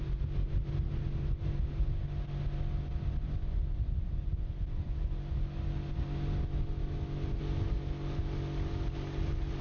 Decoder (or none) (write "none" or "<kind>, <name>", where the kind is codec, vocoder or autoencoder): none